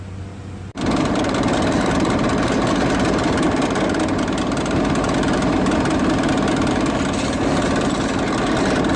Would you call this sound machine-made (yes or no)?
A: no